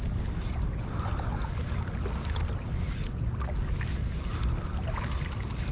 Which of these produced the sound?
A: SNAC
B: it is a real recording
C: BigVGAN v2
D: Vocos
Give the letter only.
B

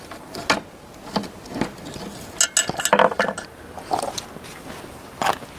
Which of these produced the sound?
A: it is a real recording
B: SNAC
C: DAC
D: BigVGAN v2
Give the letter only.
A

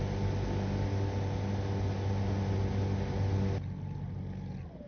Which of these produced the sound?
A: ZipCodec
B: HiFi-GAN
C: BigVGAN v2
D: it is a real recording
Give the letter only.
D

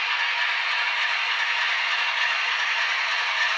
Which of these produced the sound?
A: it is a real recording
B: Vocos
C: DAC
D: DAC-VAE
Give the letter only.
B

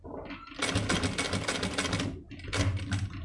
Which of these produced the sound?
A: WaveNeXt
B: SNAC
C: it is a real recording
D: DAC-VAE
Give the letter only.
C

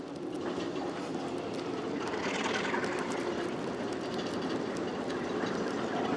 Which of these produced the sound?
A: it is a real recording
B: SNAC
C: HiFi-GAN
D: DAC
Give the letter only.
A